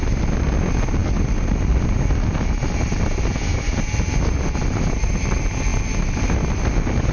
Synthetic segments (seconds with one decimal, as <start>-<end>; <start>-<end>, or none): none